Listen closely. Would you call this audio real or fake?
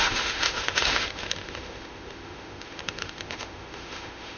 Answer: fake